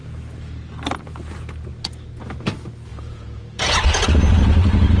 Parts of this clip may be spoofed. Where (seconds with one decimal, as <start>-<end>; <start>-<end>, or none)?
2.9-4.0